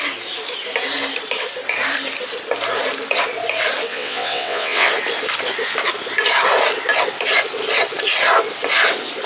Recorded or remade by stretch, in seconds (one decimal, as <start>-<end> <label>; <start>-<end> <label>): 0.0-3.9 recorded; 3.9-4.9 remade; 4.9-9.3 recorded